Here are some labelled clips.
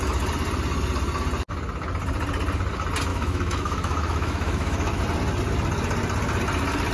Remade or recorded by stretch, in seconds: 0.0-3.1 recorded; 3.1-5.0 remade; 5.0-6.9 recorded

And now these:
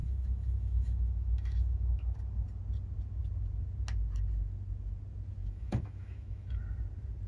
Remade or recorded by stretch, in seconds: 0.0-2.2 remade; 2.2-5.4 recorded; 5.4-6.6 remade; 6.6-7.3 recorded

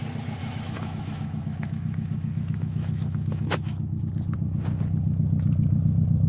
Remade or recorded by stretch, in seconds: 0.0-0.4 recorded; 0.4-4.0 remade; 4.0-6.3 recorded

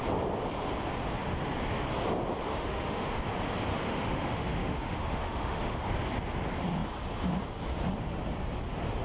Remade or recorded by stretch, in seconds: 0.0-2.5 recorded; 2.5-3.1 remade; 3.1-3.7 recorded; 3.7-5.8 remade; 5.8-9.0 recorded

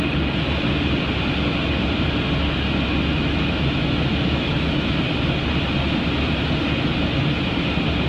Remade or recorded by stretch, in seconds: 0.0-3.1 recorded; 3.1-5.0 remade; 5.0-8.1 recorded

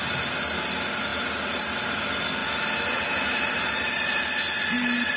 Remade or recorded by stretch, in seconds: 0.0-5.2 recorded